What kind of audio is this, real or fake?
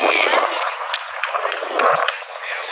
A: fake